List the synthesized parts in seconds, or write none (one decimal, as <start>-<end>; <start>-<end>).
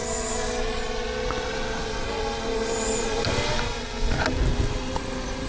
none